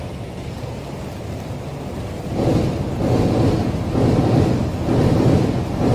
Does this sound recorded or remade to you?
recorded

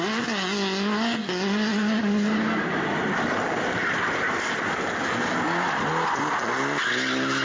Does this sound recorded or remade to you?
recorded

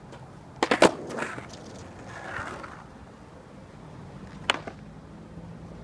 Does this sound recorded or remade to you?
recorded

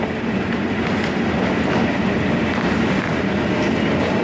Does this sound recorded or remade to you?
recorded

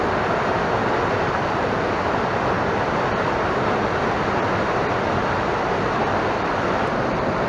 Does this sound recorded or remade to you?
recorded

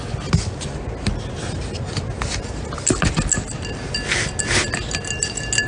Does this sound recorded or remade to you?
recorded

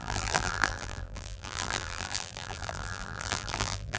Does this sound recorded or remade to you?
remade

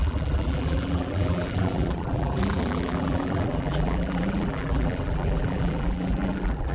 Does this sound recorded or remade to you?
remade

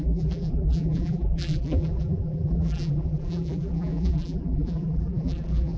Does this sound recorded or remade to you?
remade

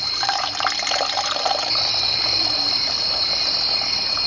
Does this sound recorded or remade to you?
remade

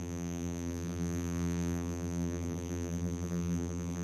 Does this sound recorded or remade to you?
remade